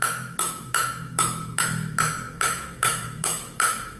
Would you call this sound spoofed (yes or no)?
yes